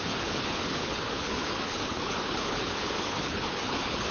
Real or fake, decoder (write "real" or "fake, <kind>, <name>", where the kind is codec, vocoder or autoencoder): fake, codec, HILCodec